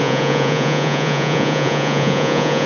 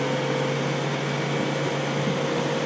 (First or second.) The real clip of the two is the second